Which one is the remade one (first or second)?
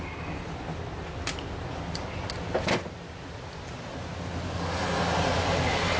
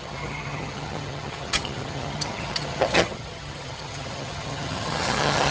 second